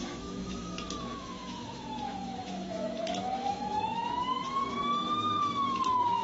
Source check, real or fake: fake